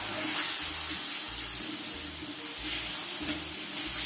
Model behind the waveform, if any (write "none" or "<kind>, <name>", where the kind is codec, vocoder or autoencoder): none